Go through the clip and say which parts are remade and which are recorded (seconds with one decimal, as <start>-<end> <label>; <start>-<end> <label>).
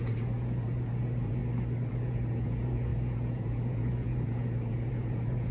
0.0-1.4 remade; 1.4-1.9 recorded; 1.9-5.5 remade